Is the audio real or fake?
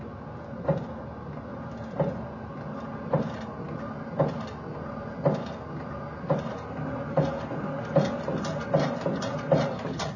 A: real